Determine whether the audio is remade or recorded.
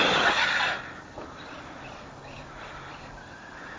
recorded